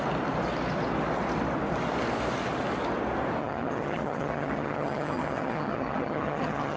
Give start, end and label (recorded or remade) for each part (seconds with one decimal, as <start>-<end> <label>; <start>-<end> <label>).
0.0-3.4 recorded; 3.4-6.8 remade